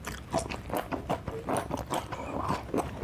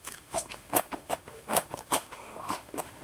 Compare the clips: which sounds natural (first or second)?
first